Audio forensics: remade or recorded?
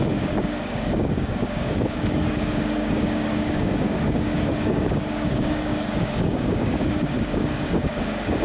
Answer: remade